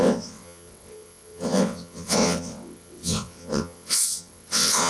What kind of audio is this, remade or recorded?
remade